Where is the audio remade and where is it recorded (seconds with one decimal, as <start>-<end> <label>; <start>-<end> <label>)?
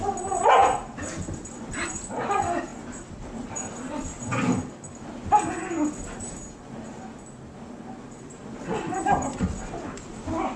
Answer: 0.0-2.7 recorded; 2.7-4.7 remade; 4.7-8.4 recorded; 8.4-10.1 remade; 10.1-10.6 recorded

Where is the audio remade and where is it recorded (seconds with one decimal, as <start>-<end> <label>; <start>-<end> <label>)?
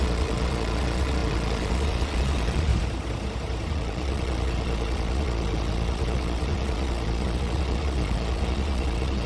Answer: 0.0-2.7 remade; 2.7-3.7 recorded; 3.7-9.3 remade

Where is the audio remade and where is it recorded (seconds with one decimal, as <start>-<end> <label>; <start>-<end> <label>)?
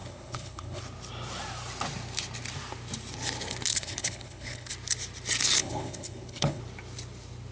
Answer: 0.0-0.8 remade; 0.8-3.7 recorded; 3.7-4.7 remade; 4.7-5.6 recorded; 5.6-6.6 remade; 6.6-7.5 recorded